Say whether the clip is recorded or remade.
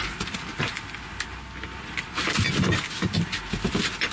recorded